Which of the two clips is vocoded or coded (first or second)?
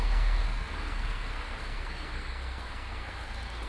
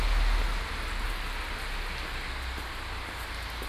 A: first